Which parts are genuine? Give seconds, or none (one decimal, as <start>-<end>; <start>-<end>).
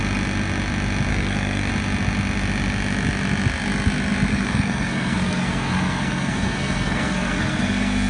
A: 0.0-1.1; 1.7-4.3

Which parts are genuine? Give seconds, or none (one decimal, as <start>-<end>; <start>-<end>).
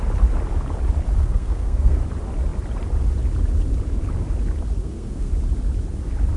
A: 0.0-1.2; 2.0-4.8; 5.3-6.4